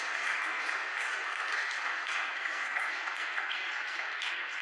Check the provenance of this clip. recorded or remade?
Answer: remade